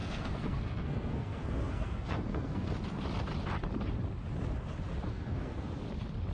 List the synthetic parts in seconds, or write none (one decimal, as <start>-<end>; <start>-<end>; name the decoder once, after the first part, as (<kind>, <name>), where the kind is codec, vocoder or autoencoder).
0.0-2.7 (codec, SNAC); 5.1-5.8